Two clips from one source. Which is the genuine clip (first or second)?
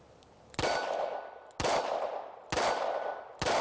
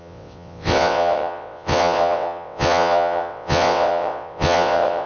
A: first